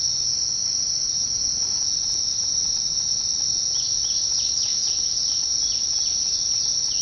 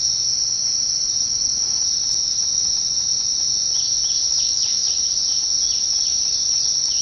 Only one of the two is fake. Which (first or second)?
second